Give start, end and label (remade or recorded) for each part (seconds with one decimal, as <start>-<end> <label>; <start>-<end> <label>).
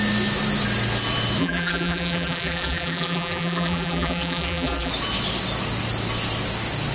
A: 0.0-1.4 recorded; 1.4-4.9 remade; 4.9-6.9 recorded